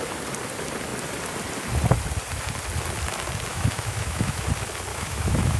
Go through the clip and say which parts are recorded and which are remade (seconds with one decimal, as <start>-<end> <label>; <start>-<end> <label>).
0.0-3.5 recorded; 3.5-4.5 remade; 4.5-4.9 recorded; 4.9-5.6 remade